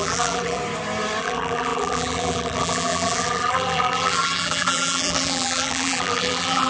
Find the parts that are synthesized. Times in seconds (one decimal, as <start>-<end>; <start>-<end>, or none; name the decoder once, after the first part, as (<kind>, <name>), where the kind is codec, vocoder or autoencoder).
0.0-0.6 (vocoder, BigVGAN v2); 1.2-6.7